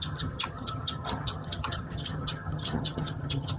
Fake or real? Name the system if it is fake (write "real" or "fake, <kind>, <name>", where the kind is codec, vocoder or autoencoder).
fake, vocoder, HiFi-GAN